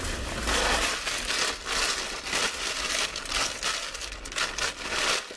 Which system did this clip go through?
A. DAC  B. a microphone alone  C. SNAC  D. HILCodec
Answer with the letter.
B